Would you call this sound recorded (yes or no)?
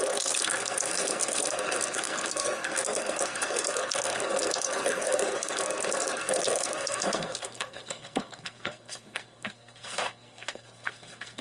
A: no